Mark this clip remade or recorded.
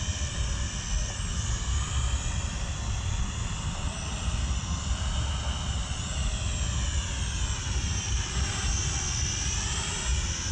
recorded